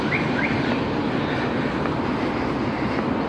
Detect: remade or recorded recorded